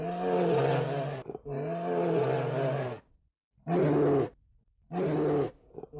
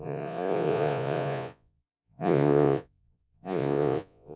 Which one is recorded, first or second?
first